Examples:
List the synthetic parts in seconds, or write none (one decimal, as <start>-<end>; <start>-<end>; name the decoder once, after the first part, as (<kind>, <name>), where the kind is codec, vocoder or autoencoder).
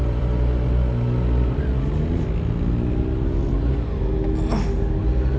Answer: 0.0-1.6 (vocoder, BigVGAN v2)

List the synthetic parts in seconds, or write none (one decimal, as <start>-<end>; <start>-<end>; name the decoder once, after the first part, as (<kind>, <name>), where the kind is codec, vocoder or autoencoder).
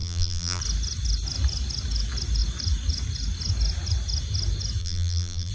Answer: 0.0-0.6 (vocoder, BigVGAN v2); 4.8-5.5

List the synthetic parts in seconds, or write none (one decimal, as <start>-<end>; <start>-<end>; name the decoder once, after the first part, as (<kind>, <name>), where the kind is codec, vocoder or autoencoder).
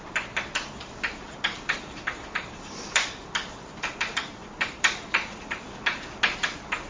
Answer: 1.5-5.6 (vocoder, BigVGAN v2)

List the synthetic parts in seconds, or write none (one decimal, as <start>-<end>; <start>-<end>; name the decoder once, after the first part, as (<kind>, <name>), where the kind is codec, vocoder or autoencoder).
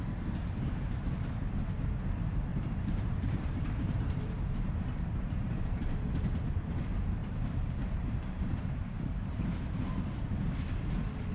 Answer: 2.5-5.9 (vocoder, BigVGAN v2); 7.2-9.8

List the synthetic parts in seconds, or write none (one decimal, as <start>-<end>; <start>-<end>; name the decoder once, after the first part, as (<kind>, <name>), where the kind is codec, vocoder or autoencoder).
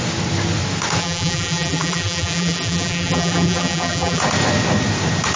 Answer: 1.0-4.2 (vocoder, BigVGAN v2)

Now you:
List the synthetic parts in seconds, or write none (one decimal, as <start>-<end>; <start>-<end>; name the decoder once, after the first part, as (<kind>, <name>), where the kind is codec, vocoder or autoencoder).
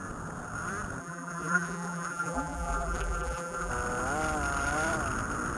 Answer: 1.0-3.7 (vocoder, BigVGAN v2)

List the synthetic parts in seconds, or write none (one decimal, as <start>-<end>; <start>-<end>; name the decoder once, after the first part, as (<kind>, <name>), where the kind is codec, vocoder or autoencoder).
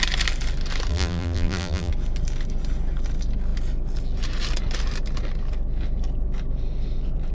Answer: 0.9-1.9 (vocoder, BigVGAN v2)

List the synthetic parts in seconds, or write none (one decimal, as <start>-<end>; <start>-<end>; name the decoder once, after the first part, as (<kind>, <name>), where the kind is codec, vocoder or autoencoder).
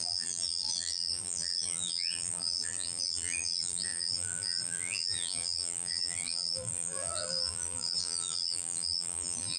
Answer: 0.0-9.6 (vocoder, BigVGAN v2)